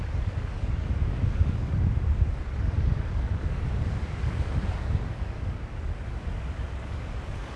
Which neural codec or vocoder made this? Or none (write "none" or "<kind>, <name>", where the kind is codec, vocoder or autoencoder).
codec, DAC